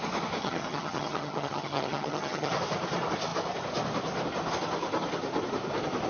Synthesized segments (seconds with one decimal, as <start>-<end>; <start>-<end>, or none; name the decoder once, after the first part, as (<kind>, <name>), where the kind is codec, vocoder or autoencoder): 0.4-2.5 (vocoder, HiFi-GAN)